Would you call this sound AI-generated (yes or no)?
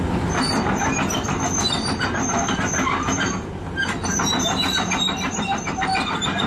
no